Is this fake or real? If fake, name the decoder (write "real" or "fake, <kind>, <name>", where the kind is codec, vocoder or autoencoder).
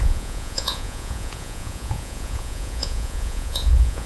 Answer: fake, vocoder, Vocos